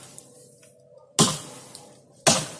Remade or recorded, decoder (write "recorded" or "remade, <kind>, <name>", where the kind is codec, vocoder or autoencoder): recorded